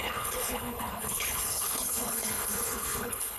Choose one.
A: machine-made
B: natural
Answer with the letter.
A